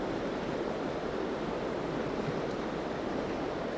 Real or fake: fake